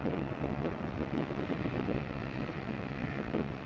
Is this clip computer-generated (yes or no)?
yes